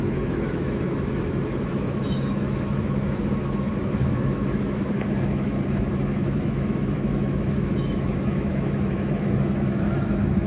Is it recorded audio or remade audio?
remade